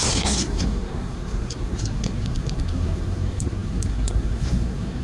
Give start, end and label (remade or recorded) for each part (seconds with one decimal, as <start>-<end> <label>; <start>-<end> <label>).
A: 0.0-5.0 remade